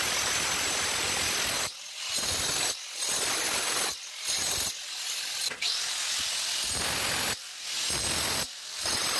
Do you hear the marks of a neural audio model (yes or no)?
no